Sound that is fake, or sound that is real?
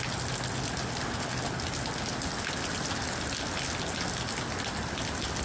real